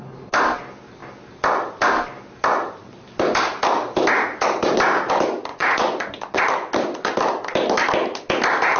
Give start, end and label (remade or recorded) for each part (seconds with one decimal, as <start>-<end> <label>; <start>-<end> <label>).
0.0-5.5 recorded; 5.5-6.4 remade; 6.4-8.8 recorded